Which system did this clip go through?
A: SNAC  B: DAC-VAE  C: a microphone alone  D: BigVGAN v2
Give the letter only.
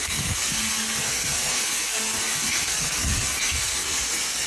A